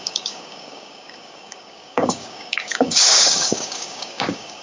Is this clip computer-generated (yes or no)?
yes